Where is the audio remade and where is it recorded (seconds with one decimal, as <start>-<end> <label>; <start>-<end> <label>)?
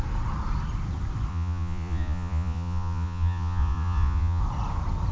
0.0-1.3 recorded; 1.3-4.4 remade; 4.4-5.1 recorded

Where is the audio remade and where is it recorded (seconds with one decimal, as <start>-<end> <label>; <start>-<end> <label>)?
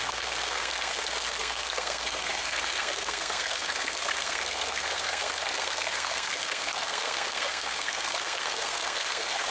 0.0-9.5 remade